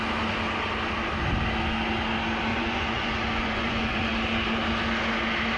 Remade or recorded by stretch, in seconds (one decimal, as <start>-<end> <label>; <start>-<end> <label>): 0.0-2.5 recorded; 2.5-4.1 remade; 4.1-5.6 recorded